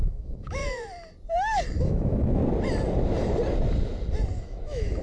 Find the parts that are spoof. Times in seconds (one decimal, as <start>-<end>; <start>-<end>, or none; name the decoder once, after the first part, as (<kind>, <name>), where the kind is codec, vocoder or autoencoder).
0.0-0.6 (autoencoder, DAC-VAE); 1.8-2.4; 4.4-5.0